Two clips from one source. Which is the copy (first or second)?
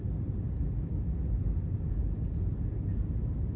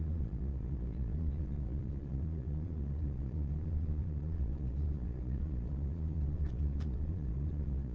second